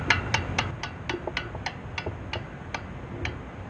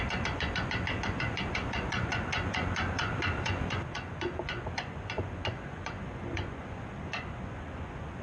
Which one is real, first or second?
first